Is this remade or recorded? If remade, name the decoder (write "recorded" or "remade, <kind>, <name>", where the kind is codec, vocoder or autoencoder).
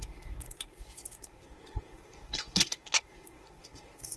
remade, codec, SNAC